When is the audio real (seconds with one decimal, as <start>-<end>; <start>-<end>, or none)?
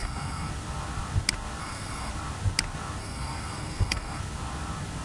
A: 0.5-1.6; 2.1-3.0; 4.2-5.0